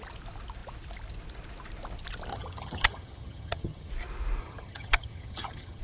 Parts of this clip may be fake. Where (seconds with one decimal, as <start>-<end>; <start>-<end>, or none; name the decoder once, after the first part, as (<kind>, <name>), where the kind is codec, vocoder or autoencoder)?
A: 2.3-3.9 (vocoder, HiFi-GAN); 4.4-5.8